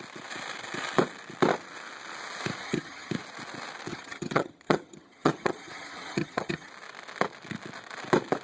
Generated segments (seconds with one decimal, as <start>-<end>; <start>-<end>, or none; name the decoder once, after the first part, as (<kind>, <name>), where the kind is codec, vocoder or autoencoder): 2.6-3.1 (vocoder, HiFi-GAN); 3.9-6.7